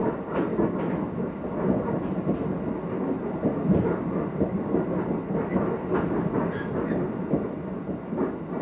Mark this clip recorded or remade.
recorded